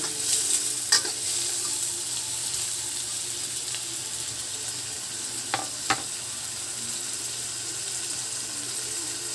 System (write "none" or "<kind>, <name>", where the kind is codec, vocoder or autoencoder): none